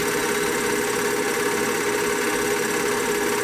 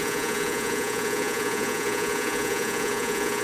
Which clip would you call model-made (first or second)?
second